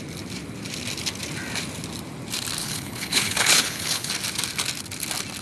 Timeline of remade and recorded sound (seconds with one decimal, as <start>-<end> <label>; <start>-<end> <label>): 0.0-2.6 recorded; 2.6-4.1 remade; 4.1-5.4 recorded